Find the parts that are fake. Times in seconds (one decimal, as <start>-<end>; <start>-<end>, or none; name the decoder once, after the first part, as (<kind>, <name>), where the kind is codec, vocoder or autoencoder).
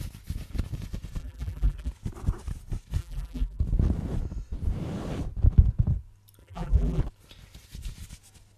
1.2-1.9 (vocoder, BigVGAN v2); 3.0-3.6; 6.4-7.0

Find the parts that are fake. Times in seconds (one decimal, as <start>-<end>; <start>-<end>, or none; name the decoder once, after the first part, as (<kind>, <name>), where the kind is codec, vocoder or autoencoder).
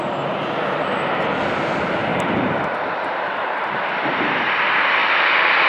2.1-3.9 (vocoder, BigVGAN v2)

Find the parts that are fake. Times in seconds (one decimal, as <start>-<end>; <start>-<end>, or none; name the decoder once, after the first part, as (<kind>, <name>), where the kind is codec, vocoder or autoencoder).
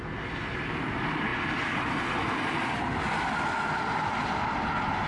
none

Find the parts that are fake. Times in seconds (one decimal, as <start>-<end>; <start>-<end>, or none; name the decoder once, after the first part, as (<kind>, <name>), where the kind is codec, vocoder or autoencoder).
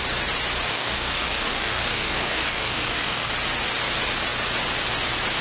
0.7-3.3 (codec, DAC)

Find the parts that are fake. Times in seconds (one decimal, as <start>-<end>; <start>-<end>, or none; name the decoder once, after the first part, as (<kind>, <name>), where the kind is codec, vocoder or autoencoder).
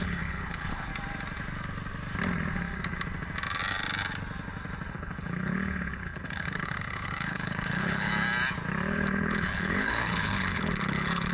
0.0-0.9 (codec, HILCodec); 4.9-8.1; 8.9-11.3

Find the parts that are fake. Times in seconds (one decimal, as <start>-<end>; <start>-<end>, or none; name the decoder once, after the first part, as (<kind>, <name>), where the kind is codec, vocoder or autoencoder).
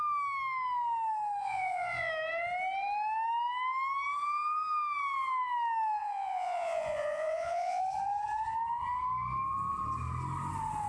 1.4-2.1 (vocoder, Vocos); 6.0-7.8